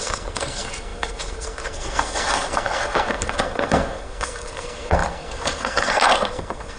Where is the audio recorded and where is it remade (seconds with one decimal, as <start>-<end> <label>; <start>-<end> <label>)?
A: 0.0-6.8 remade